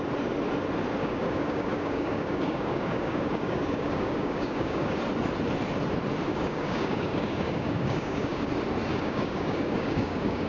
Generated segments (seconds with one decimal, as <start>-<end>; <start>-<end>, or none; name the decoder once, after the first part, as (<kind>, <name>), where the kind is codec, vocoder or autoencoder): 1.0-5.0 (codec, DAC); 6.3-8.5; 8.9-10.5